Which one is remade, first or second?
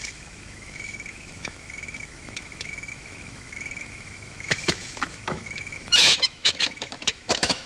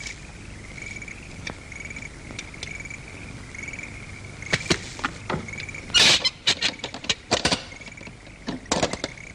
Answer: first